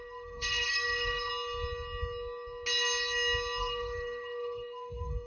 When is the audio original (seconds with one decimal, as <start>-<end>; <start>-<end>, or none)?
1.3-3.6